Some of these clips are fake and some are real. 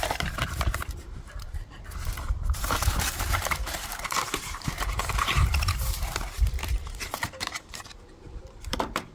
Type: fake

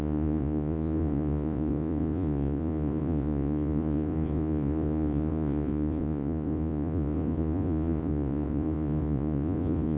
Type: fake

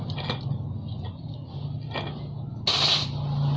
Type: real